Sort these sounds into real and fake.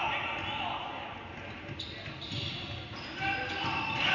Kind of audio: real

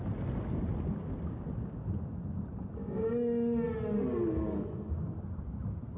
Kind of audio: real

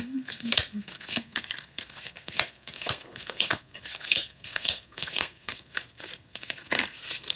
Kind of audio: fake